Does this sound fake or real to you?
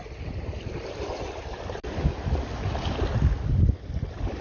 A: real